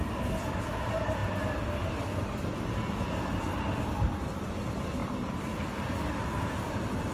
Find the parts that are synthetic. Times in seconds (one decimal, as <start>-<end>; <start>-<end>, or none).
5.0-7.1